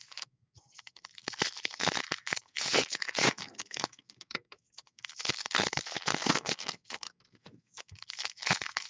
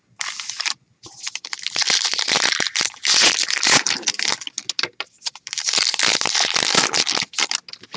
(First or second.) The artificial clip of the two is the first